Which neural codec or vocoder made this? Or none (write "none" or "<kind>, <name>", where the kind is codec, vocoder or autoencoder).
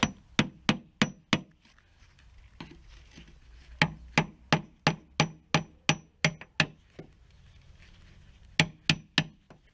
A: none